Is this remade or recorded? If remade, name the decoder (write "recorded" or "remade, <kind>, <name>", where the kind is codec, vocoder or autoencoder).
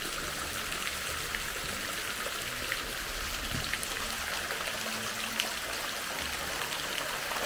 recorded